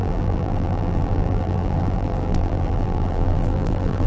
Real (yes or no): no